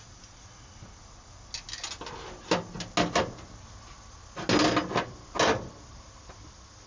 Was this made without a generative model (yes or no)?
yes